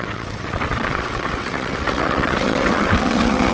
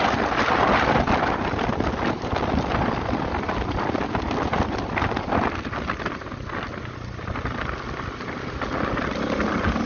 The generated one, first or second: first